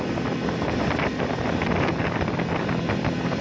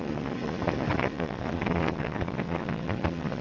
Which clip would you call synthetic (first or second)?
second